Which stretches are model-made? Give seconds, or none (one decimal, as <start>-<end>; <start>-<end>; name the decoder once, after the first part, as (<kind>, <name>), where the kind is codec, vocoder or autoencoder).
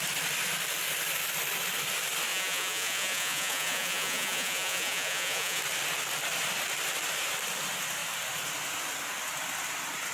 2.3-5.6 (vocoder, Vocos)